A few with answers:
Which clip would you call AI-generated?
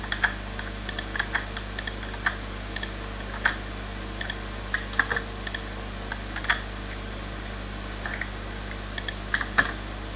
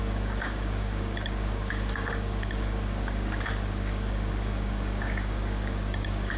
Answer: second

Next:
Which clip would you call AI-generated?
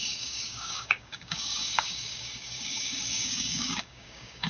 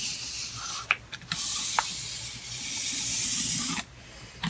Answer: first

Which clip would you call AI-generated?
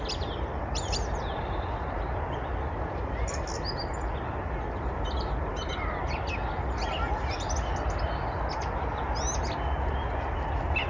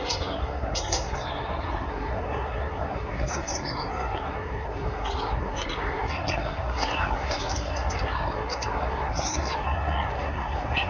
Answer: second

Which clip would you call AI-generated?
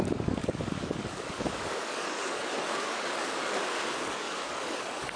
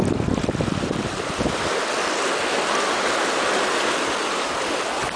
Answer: first